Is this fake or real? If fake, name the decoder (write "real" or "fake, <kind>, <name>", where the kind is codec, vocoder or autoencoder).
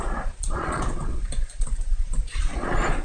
fake, vocoder, Vocos